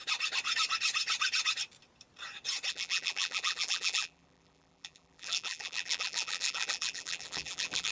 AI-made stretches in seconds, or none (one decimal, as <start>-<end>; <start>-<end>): 2.7-7.9